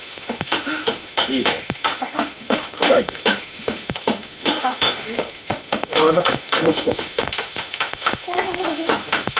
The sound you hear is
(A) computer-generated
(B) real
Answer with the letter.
A